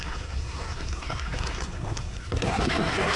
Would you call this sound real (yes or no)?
no